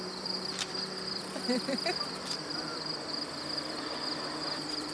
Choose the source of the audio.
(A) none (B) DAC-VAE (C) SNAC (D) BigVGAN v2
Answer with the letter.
D